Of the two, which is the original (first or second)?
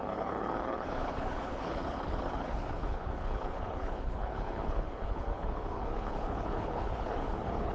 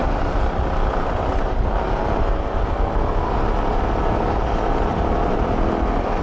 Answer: second